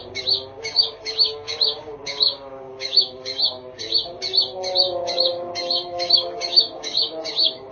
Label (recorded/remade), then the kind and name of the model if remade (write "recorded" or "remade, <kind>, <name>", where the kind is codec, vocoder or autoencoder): remade, codec, DAC